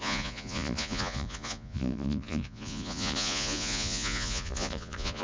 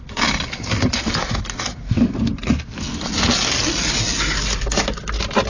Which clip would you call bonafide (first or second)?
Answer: second